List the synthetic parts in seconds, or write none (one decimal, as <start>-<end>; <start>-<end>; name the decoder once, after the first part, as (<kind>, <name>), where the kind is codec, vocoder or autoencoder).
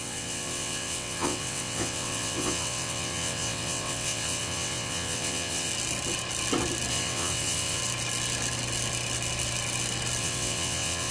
0.0-5.7 (vocoder, WaveNeXt); 6.9-7.8; 10.2-11.1